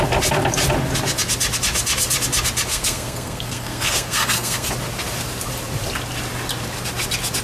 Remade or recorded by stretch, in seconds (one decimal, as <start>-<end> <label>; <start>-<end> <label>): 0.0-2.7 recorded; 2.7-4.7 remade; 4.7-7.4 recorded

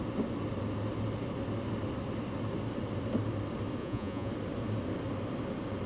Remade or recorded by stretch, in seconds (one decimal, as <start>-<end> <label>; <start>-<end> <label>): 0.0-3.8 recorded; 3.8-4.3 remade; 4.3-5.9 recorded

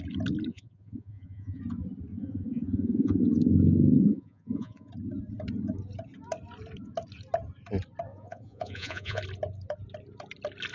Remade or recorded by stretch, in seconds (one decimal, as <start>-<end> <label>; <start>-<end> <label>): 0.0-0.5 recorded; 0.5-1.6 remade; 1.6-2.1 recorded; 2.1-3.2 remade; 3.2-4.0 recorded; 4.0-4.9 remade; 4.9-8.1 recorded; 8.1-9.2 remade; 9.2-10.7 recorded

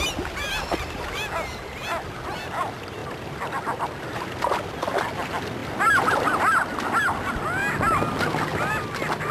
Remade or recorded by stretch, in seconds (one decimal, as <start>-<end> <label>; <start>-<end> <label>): 0.0-3.0 recorded; 3.0-4.0 remade; 4.0-9.3 recorded

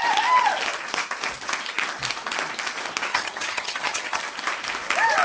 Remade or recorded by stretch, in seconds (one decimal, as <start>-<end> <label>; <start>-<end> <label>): 0.0-3.1 recorded; 3.1-4.2 remade; 4.2-5.2 recorded

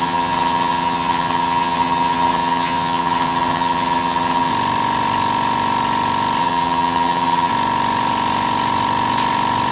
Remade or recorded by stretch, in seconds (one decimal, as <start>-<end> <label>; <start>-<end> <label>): 0.0-4.5 remade; 4.5-6.4 recorded; 6.4-7.5 remade; 7.5-9.7 recorded

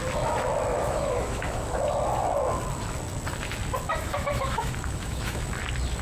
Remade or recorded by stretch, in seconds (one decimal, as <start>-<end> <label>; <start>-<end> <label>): 0.0-0.7 recorded; 0.7-1.9 remade; 1.9-3.9 recorded; 3.9-5.5 remade; 5.5-6.0 recorded

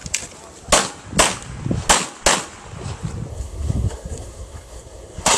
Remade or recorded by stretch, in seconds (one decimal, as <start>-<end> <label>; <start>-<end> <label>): 0.0-3.3 recorded; 3.3-5.4 remade